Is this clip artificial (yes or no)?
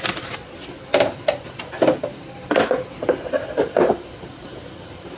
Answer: no